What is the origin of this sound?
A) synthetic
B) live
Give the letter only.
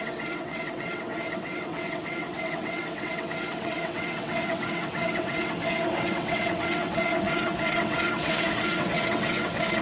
A